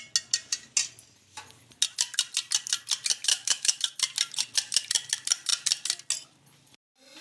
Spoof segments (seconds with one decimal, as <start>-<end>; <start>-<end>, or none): 3.3-3.8